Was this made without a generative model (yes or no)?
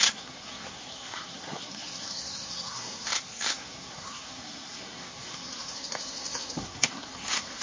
no